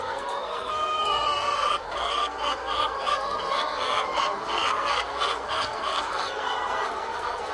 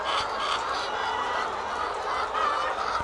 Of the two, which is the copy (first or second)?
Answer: first